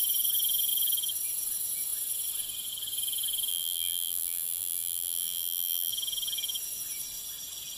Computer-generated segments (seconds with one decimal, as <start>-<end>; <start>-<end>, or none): 3.5-5.9